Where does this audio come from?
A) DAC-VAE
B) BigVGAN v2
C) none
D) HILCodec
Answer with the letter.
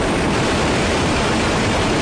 B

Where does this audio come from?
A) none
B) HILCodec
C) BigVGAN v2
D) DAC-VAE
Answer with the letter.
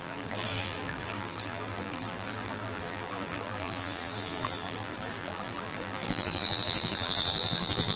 C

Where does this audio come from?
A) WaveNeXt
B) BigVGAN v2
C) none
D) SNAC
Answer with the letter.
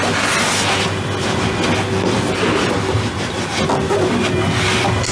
C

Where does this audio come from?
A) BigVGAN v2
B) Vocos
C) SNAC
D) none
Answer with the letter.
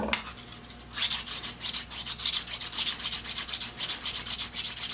D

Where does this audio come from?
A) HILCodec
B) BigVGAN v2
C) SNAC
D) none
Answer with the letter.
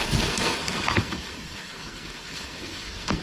C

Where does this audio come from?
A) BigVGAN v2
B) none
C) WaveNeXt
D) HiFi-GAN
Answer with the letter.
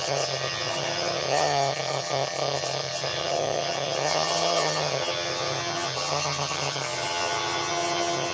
D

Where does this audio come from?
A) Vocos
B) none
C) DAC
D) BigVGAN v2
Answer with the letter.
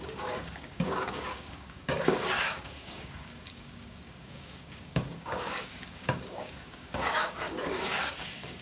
C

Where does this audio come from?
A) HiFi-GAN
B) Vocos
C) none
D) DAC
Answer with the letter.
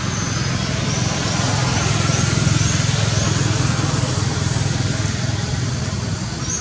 C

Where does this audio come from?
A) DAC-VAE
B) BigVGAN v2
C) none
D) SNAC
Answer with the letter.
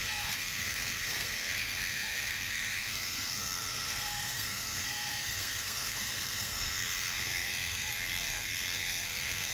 D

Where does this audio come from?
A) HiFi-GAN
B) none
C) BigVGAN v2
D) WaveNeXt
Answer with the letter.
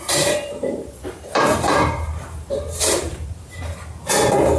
C